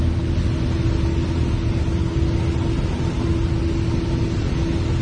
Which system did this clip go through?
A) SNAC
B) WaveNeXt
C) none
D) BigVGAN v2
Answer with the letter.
C